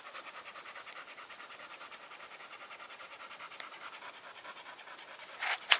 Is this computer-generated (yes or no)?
no